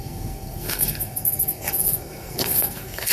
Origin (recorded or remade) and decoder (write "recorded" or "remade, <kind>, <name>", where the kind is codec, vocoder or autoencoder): remade, codec, SNAC